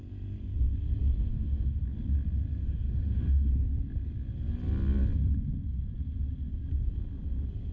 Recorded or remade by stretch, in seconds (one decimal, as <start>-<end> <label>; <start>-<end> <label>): 0.0-1.3 recorded; 1.3-1.8 remade; 1.8-2.6 recorded; 2.6-3.5 remade; 3.5-7.7 recorded